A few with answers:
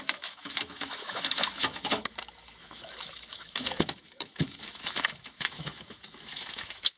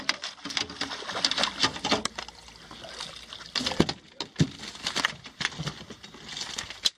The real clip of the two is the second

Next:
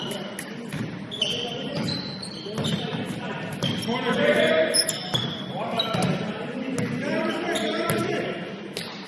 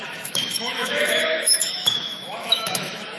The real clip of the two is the first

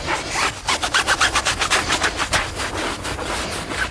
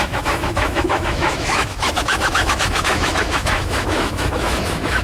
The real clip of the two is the first